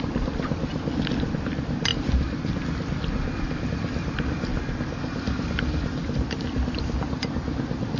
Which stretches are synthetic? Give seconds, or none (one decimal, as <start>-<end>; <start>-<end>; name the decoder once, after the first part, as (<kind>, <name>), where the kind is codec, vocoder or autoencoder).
0.0-8.0 (vocoder, BigVGAN v2)

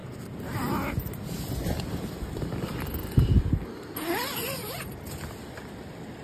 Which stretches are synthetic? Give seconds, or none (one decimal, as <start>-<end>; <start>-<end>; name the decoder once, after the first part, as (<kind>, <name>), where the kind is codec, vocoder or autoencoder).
none

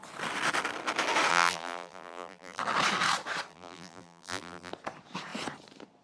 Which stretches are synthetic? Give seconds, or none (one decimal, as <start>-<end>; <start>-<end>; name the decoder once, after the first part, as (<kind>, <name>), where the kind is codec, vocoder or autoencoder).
1.3-2.6 (vocoder, BigVGAN v2); 3.5-4.7

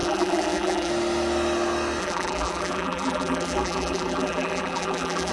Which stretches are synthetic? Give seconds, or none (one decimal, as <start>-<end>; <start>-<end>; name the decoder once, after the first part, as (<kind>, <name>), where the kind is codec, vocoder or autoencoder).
0.0-0.9 (vocoder, BigVGAN v2); 2.0-5.3

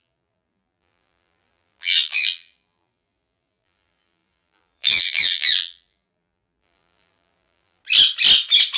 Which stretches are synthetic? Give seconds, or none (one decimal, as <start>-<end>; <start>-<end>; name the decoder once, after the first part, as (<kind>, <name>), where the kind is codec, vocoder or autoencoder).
0.0-7.8 (vocoder, BigVGAN v2)

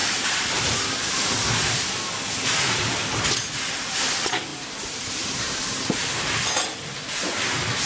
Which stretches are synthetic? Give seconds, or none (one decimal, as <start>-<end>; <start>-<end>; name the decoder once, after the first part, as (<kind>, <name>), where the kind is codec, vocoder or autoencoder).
0.0-0.7 (vocoder, BigVGAN v2)